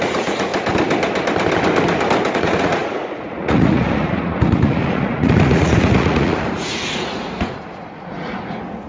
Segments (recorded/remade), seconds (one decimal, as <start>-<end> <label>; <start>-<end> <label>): 0.0-0.5 remade; 0.5-2.3 recorded; 2.3-8.9 remade